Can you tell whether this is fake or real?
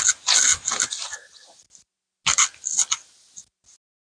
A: real